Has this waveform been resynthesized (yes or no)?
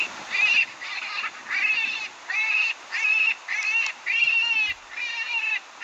no